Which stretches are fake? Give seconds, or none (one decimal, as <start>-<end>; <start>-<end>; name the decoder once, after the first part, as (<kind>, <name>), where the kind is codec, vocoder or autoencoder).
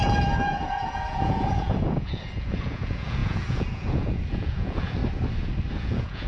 0.0-5.0 (vocoder, Vocos); 5.7-6.3